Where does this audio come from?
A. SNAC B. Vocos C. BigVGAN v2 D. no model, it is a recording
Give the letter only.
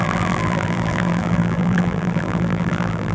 C